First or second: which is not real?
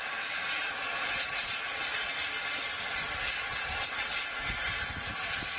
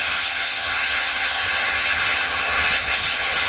second